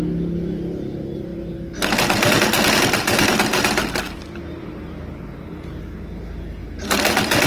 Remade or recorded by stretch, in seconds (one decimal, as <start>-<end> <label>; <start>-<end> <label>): 0.0-7.5 recorded